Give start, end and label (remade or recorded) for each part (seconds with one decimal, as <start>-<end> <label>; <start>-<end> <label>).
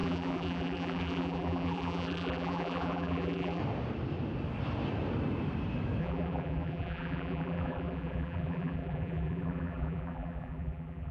0.0-3.6 remade; 3.6-6.0 recorded; 6.0-11.1 remade